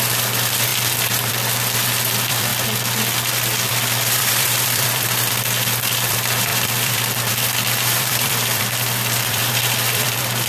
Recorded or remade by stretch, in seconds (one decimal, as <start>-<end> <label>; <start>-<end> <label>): 0.0-2.5 remade; 2.5-3.7 recorded; 3.7-10.5 remade